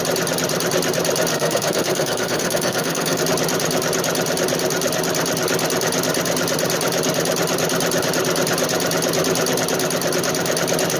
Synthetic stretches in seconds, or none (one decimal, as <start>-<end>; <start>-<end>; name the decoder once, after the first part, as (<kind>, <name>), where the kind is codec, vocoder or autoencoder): 1.3-3.2 (codec, SNAC)